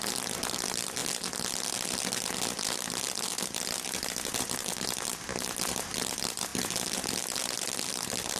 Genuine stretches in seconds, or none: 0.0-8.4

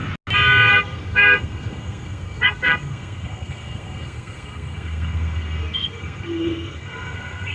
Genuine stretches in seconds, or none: 0.0-0.7

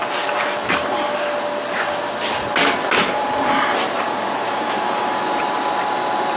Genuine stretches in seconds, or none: 0.0-3.0; 5.6-6.4

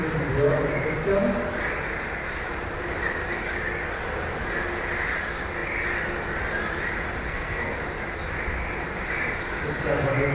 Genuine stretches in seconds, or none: 0.0-7.2; 7.8-10.3

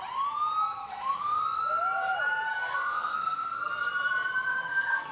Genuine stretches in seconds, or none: 0.0-0.8; 1.4-2.5; 3.7-4.5

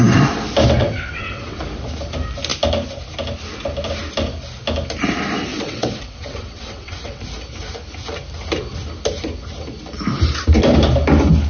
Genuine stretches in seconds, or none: 0.0-0.8; 1.6-5.5; 7.2-11.5

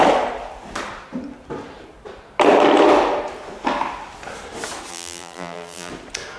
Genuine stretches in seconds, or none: 0.0-4.9; 5.9-6.4

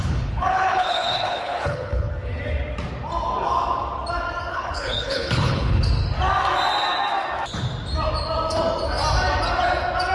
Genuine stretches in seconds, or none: 2.1-4.5; 5.8-10.1